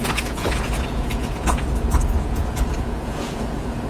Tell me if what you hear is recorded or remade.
remade